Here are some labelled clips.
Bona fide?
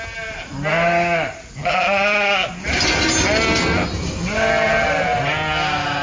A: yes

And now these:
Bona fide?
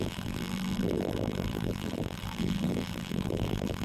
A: no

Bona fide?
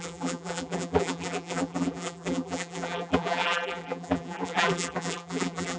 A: no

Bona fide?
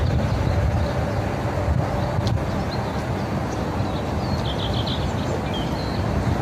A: yes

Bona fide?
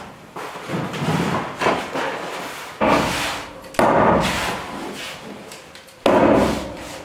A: yes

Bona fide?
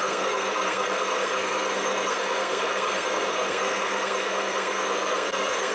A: no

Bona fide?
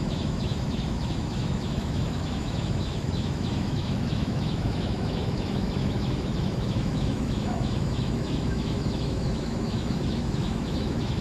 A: no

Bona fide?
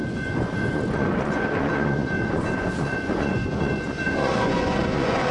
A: no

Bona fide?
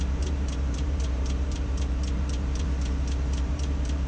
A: no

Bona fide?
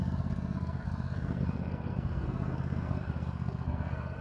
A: no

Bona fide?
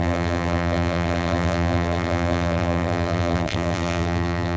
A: no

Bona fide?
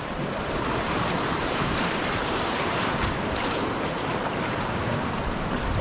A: no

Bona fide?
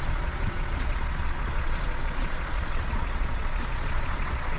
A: no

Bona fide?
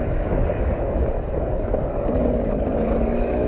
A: no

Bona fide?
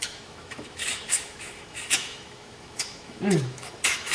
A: no